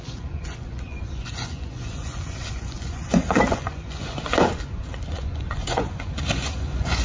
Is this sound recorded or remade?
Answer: remade